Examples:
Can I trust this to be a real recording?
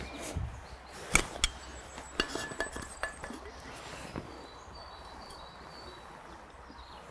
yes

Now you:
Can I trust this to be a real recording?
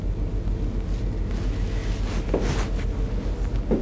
yes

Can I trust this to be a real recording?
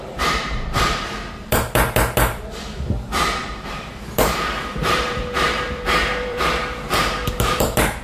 no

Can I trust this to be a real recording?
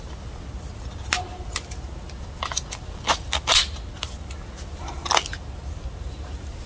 yes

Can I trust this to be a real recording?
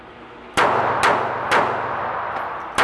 yes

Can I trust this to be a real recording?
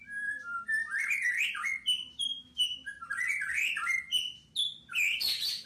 yes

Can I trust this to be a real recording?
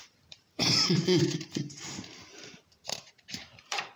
no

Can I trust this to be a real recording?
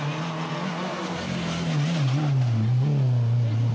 yes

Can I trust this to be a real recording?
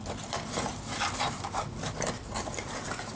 no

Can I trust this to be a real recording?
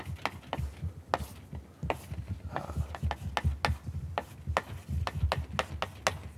yes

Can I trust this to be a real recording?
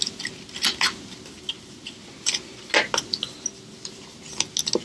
yes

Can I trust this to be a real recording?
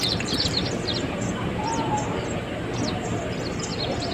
no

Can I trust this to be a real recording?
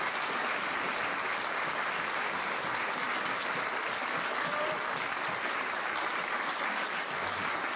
yes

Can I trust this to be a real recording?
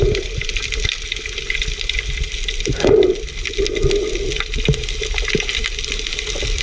yes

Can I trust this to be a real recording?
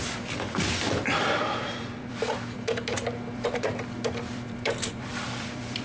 no